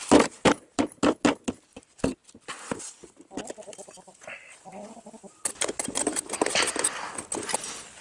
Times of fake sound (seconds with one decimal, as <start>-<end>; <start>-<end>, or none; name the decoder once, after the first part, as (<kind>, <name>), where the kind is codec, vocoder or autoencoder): 0.0-0.8 (vocoder, BigVGAN v2); 1.7-3.9